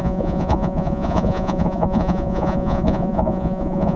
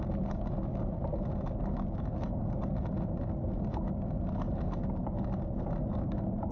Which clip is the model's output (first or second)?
first